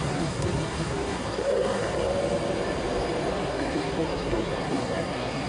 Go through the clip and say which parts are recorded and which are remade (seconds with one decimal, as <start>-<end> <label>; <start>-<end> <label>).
0.0-2.1 remade; 2.1-3.3 recorded; 3.3-5.5 remade